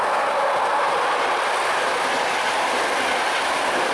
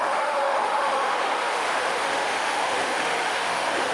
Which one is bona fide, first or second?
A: first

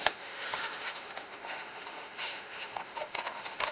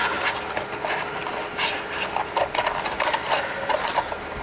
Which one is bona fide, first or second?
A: second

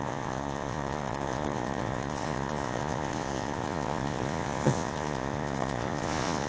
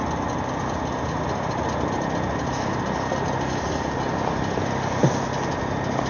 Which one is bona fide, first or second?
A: second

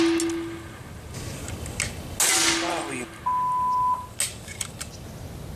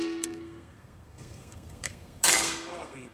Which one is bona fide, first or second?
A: first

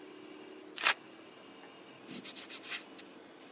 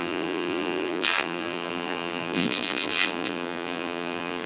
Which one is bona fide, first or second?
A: first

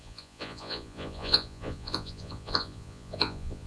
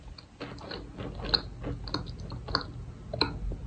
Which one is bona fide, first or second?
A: second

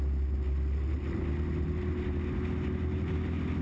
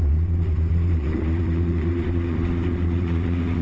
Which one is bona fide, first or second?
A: first